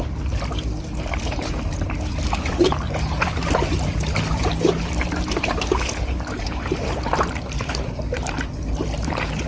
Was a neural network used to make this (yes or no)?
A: no